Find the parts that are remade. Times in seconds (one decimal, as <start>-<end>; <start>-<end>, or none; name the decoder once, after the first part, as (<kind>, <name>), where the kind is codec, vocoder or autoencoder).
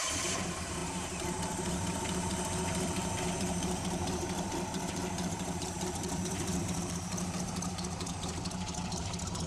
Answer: 0.0-9.5 (vocoder, BigVGAN v2)